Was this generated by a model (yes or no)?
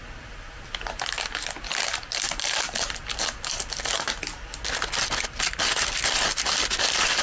no